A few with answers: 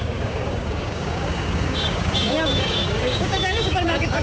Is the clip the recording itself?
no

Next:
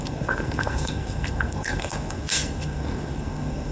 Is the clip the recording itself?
no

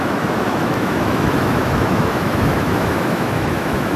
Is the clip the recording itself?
no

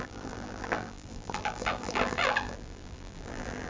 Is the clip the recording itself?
no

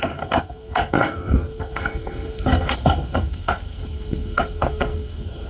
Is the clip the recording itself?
no